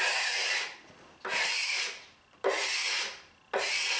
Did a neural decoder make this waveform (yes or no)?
no